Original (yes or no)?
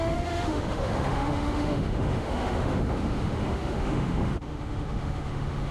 no